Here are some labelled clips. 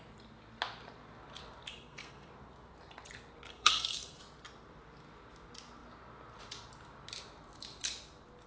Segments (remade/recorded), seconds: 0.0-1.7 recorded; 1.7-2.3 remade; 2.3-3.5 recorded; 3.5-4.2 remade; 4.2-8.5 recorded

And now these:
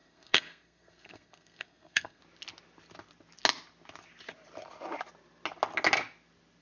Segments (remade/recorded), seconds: 0.0-2.2 remade; 2.2-6.6 recorded